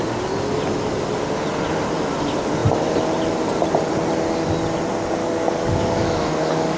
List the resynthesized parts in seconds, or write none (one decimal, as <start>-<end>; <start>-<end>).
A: 5.2-6.8